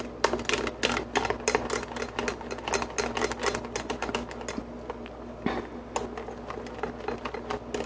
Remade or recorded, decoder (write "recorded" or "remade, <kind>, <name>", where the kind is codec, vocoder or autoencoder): recorded